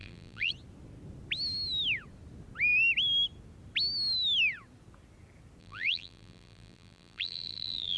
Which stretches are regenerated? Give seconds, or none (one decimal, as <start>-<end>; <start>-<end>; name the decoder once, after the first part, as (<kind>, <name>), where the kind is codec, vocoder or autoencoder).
0.0-0.5 (vocoder, BigVGAN v2); 5.6-8.0